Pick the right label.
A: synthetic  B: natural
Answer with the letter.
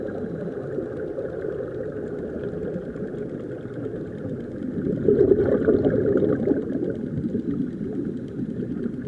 B